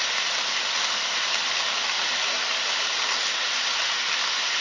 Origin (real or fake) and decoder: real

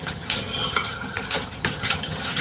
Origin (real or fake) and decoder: fake, vocoder, HiFi-GAN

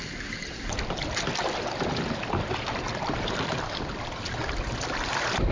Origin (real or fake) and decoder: real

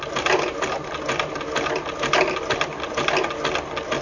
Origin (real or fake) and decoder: real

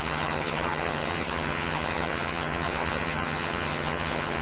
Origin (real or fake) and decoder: fake, vocoder, HiFi-GAN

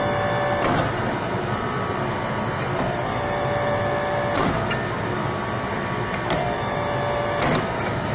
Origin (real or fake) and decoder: real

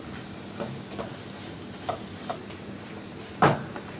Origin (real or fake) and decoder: real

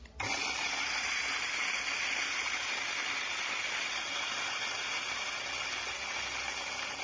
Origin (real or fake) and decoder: real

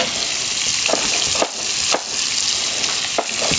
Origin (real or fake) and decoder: real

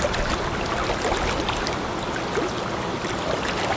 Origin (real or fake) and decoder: real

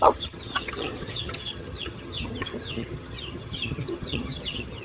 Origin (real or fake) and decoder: fake, vocoder, HiFi-GAN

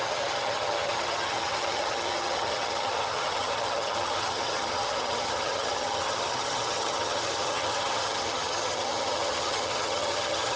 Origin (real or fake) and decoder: fake, vocoder, HiFi-GAN